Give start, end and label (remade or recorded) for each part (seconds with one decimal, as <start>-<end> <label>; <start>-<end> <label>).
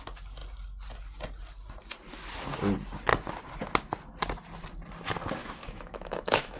0.0-5.4 recorded; 5.4-6.6 remade